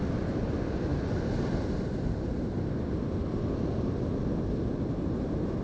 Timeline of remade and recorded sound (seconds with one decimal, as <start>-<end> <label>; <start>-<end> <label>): 0.0-5.6 recorded